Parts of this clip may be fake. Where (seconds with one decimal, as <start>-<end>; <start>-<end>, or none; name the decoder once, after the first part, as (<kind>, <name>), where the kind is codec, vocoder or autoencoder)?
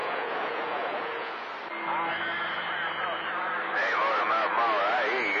0.0-1.5 (vocoder, Vocos)